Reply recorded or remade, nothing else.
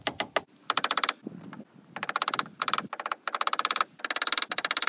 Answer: recorded